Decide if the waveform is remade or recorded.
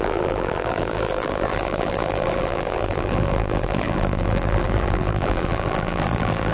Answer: remade